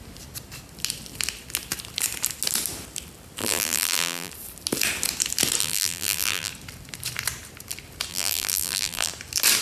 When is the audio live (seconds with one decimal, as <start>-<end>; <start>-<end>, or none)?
0.0-3.4; 4.3-5.6; 6.5-8.1; 9.1-9.6